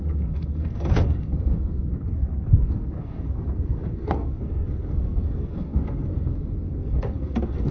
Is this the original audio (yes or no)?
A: no